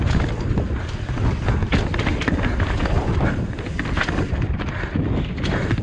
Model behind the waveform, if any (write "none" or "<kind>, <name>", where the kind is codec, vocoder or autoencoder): none